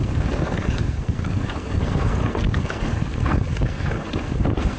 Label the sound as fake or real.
fake